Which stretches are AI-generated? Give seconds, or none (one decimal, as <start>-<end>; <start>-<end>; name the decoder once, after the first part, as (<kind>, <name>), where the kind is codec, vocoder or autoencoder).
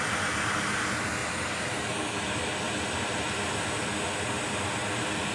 none